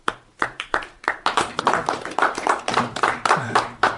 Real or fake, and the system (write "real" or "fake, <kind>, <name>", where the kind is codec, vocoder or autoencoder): fake, vocoder, BigVGAN v2